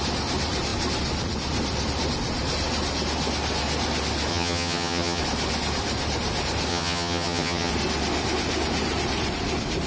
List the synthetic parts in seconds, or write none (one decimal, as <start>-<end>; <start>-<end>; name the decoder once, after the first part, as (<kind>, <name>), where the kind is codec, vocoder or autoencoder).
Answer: 4.3-5.2 (vocoder, HiFi-GAN); 6.7-7.7